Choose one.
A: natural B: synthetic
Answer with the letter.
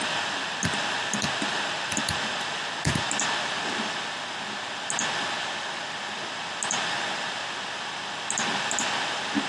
A